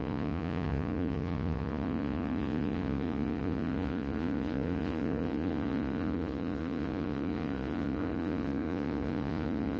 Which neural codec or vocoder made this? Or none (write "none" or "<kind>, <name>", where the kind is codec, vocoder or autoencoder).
vocoder, Vocos